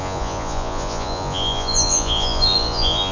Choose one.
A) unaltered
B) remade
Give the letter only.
B